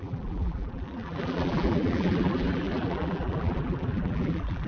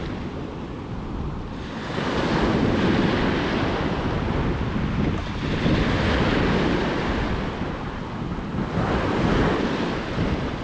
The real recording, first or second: second